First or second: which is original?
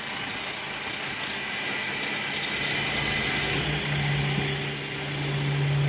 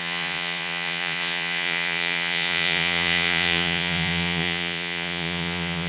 first